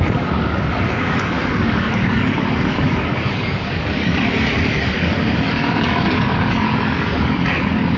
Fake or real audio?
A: fake